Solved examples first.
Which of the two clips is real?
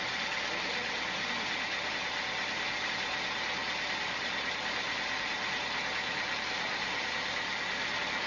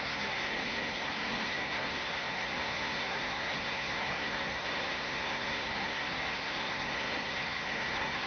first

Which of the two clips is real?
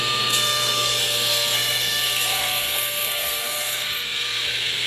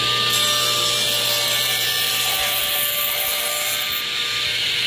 second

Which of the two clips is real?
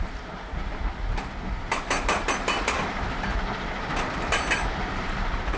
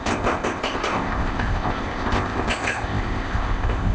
first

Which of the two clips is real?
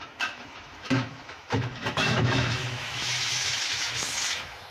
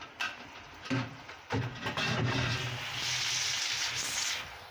second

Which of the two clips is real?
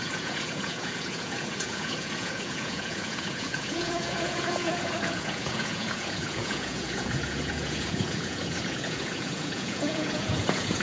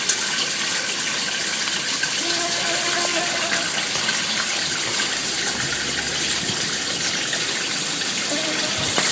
second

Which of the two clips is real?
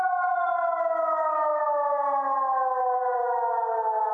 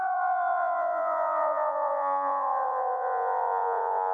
first